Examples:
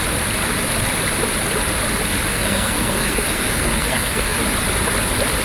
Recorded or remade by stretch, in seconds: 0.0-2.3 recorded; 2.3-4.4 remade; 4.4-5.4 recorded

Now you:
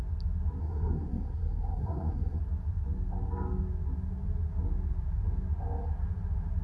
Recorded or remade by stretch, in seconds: 0.0-0.6 recorded; 0.6-2.4 remade; 2.4-6.6 recorded

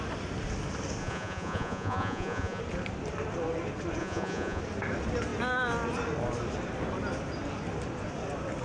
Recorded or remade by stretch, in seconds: 0.0-1.0 recorded; 1.0-2.6 remade; 2.6-4.0 recorded; 4.0-4.6 remade; 4.6-8.6 recorded

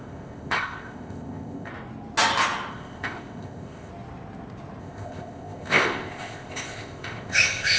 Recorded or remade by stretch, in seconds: 0.0-1.7 remade; 1.7-2.7 recorded; 2.7-3.9 remade; 3.9-4.8 recorded; 4.8-7.8 remade

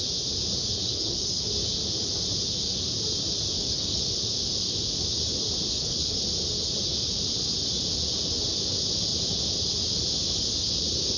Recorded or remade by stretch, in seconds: 0.0-0.6 recorded; 0.6-1.5 remade; 1.5-3.6 recorded; 3.6-4.1 remade; 4.1-5.7 recorded; 5.7-6.2 remade; 6.2-11.2 recorded